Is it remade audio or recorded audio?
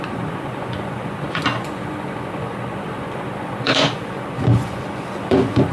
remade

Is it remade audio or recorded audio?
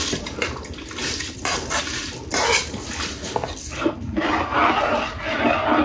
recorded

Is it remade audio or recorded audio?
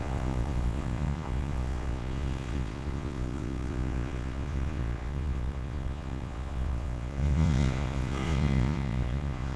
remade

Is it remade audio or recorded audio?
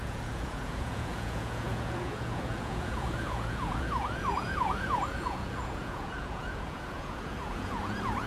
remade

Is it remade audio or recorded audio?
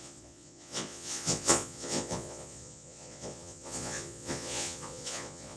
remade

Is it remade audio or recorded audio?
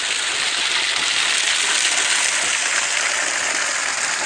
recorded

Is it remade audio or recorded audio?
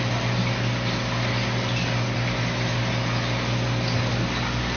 recorded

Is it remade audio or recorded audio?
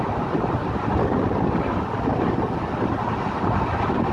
recorded